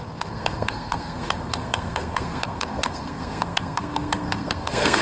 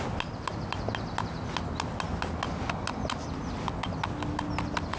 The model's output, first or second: first